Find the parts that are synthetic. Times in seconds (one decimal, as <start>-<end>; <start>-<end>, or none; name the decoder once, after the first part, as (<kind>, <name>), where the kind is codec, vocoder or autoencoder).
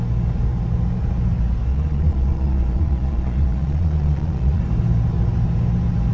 1.7-4.6 (vocoder, Vocos)